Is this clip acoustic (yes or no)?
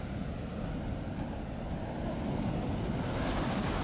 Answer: yes